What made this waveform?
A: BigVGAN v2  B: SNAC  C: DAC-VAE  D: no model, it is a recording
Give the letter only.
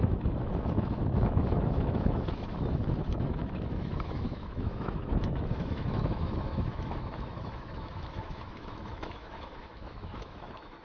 C